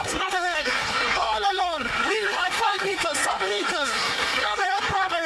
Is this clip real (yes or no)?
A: no